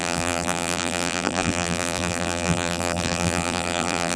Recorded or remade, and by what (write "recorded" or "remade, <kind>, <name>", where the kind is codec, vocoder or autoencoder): remade, vocoder, BigVGAN v2